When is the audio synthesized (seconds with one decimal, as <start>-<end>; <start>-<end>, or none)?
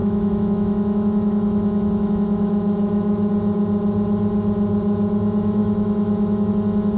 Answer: 0.0-3.3; 5.6-6.5